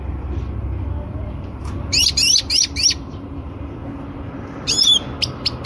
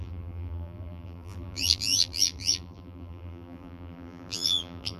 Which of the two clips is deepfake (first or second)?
second